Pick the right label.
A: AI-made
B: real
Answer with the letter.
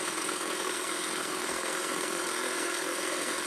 A